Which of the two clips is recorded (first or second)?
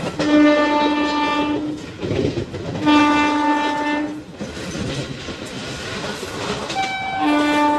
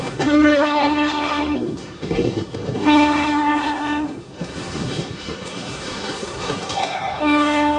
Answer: first